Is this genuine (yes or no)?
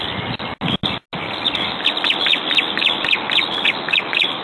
yes